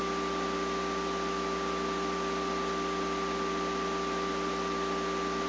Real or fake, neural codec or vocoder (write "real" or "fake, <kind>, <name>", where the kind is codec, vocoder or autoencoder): real